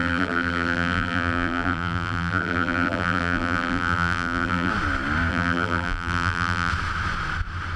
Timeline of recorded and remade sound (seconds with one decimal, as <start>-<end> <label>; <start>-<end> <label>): 0.0-4.7 remade; 4.7-5.3 recorded; 5.3-6.7 remade; 6.7-7.8 recorded